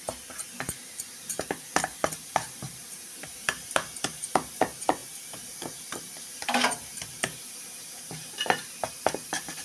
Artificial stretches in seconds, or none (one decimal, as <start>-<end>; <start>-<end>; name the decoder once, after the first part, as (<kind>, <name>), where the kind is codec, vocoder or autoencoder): 0.0-9.6 (vocoder, BigVGAN v2)